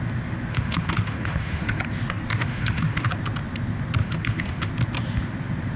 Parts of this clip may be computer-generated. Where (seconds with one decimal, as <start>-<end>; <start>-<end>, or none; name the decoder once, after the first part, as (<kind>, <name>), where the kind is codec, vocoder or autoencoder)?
0.5-1.8 (autoencoder, DAC-VAE); 2.3-3.1; 4.0-4.7